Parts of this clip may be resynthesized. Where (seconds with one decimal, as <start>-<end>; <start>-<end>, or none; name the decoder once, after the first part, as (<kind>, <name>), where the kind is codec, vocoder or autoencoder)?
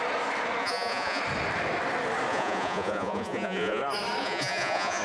0.6-1.2 (vocoder, Vocos); 2.3-3.8; 4.2-5.0